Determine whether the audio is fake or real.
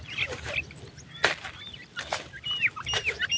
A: real